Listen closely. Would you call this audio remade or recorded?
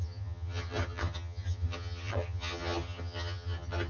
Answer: remade